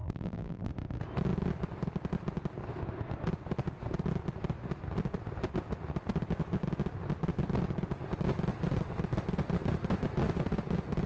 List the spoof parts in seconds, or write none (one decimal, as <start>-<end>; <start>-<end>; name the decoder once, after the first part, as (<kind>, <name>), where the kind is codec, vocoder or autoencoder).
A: 0.0-0.7 (vocoder, BigVGAN v2)